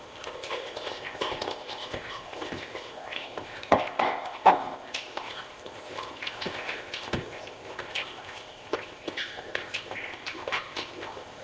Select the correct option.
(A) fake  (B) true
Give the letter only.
A